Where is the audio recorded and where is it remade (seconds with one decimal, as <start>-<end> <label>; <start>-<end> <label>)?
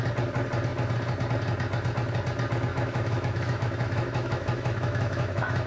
0.0-2.7 recorded; 2.7-5.7 remade